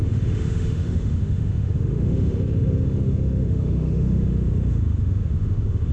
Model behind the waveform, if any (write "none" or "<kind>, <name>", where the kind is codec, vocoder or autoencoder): autoencoder, DAC-VAE